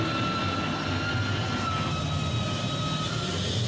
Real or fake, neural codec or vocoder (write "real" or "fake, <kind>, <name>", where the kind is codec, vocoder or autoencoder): real